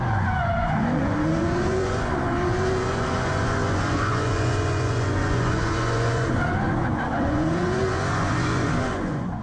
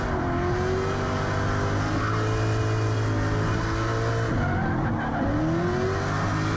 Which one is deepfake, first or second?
first